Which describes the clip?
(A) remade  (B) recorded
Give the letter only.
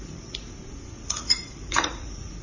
A